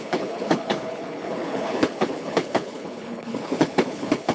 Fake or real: fake